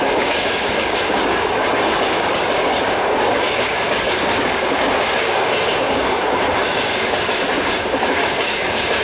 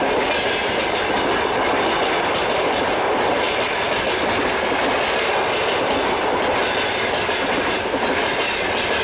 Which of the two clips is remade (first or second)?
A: first